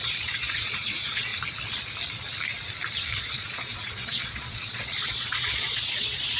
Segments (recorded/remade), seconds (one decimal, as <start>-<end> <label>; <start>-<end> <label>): 0.0-1.3 remade; 1.3-3.2 recorded; 3.2-6.4 remade